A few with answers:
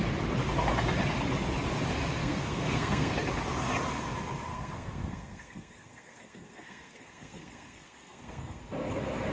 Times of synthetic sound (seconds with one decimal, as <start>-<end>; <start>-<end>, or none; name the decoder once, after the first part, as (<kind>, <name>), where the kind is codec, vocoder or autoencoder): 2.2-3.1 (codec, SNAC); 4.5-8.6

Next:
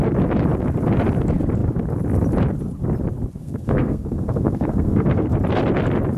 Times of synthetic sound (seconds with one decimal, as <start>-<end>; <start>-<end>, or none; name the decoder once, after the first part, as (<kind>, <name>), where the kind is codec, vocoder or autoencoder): 3.4-5.3 (codec, SNAC)

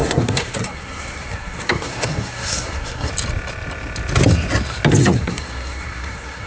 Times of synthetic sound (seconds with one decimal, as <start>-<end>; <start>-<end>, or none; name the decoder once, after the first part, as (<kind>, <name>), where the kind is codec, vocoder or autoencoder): 0.0-3.1 (codec, SNAC); 5.0-6.5